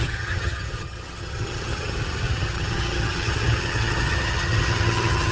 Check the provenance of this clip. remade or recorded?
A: remade